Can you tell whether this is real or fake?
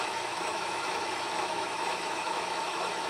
fake